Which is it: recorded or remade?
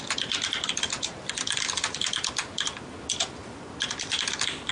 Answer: recorded